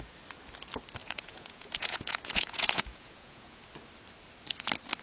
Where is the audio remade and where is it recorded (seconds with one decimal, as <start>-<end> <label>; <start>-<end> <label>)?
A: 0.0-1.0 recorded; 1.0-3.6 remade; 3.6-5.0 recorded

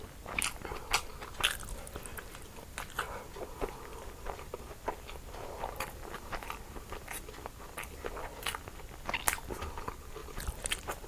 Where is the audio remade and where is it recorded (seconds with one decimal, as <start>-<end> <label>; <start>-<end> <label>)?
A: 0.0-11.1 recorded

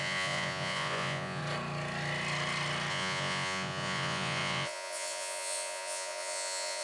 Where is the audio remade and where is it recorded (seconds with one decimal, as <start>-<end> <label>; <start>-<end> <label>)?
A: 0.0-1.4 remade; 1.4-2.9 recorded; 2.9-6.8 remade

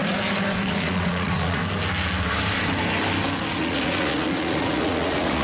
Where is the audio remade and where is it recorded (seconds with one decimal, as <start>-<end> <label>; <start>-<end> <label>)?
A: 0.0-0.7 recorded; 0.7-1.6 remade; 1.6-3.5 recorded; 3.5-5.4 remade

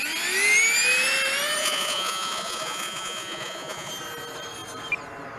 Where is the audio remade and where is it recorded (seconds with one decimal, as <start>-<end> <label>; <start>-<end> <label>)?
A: 0.0-1.6 recorded; 1.6-3.9 remade; 3.9-5.4 recorded

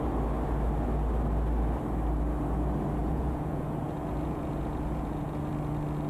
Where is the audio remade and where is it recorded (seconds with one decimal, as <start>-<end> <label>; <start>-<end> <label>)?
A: 0.0-3.0 recorded; 3.0-5.5 remade; 5.5-6.1 recorded

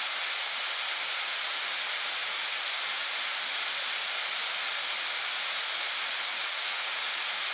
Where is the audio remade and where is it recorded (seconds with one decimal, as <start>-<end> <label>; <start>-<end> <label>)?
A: 0.0-6.3 recorded; 6.3-7.1 remade; 7.1-7.5 recorded